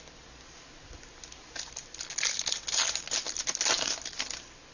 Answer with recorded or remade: recorded